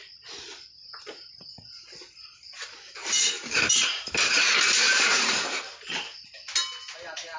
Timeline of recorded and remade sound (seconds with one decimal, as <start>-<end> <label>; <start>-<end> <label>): 0.0-3.0 recorded; 3.0-5.7 remade; 5.7-7.4 recorded